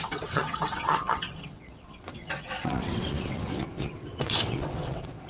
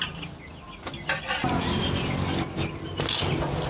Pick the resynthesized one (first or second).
first